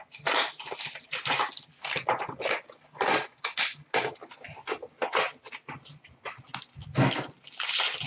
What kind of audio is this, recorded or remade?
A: recorded